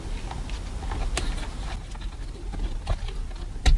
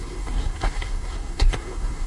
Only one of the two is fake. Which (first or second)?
second